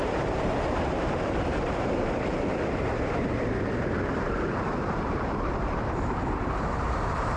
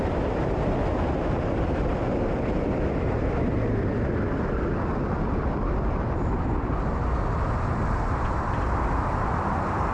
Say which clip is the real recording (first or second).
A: second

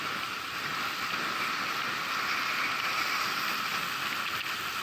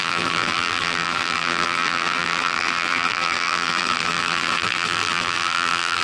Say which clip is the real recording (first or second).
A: first